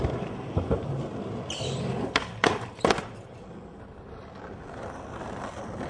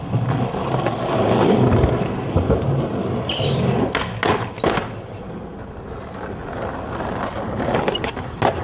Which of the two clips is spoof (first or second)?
first